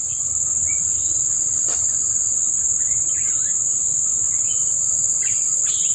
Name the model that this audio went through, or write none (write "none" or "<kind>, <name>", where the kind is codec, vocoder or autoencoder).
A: none